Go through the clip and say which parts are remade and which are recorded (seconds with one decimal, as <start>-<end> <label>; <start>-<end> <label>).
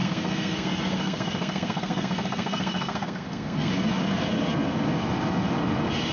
0.0-3.7 remade; 3.7-6.1 recorded